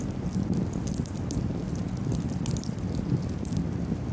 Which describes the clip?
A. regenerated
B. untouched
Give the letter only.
B